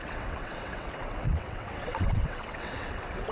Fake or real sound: fake